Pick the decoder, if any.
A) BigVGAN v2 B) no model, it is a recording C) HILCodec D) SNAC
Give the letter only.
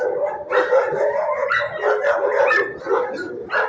B